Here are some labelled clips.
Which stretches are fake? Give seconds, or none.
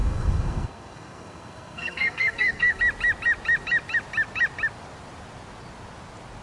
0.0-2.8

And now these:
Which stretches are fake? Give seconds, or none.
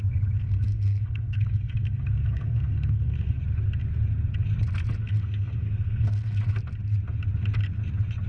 0.4-3.4; 5.0-6.5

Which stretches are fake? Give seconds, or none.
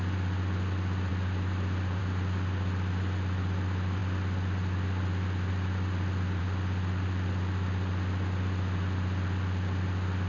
none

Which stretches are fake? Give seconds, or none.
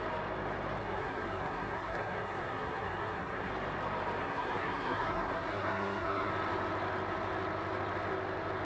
0.8-3.5; 4.2-6.3